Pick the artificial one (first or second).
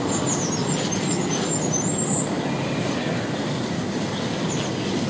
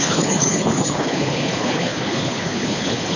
second